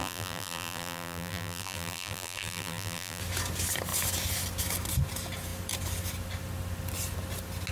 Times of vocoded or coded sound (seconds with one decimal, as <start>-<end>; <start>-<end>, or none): 0.0-3.2